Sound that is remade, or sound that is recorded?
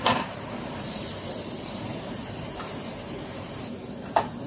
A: remade